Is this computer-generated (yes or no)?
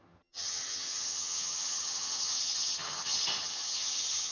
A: yes